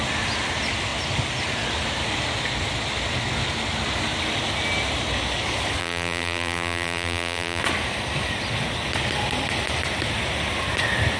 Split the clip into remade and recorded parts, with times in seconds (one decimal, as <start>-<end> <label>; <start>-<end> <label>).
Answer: 0.0-5.8 recorded; 5.8-7.6 remade; 7.6-11.2 recorded